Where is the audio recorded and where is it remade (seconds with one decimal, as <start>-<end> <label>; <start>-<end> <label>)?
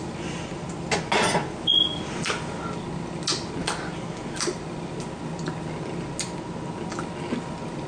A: 0.0-7.9 recorded